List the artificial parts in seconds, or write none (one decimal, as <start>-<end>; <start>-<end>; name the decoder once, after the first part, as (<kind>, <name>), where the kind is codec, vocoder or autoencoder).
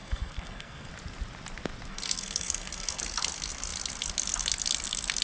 0.0-0.9 (codec, SNAC); 1.9-3.0